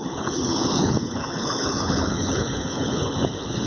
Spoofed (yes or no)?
yes